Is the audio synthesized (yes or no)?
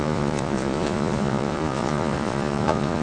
yes